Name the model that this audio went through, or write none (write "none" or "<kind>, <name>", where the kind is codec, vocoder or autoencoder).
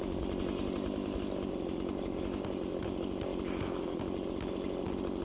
none